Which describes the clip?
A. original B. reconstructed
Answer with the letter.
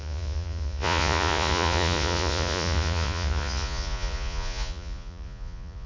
B